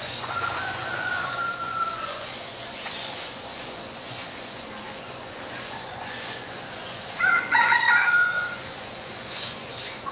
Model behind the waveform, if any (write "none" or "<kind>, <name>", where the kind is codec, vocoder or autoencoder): vocoder, Vocos